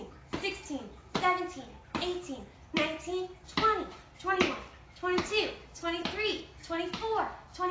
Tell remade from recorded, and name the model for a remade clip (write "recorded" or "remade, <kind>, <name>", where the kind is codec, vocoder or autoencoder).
recorded